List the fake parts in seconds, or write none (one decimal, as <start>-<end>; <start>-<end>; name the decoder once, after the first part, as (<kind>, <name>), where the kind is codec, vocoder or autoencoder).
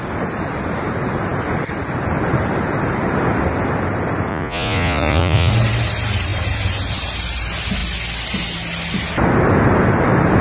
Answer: 4.3-5.5 (vocoder, Vocos)